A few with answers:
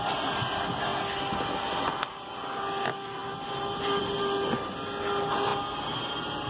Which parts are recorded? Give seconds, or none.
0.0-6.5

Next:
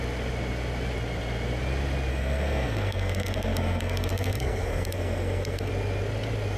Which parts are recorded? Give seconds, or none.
0.0-2.1; 5.7-6.6

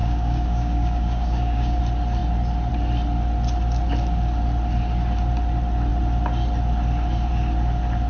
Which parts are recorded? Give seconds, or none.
1.8-8.1

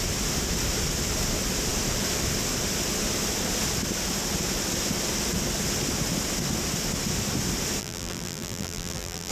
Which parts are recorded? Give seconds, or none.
0.0-7.8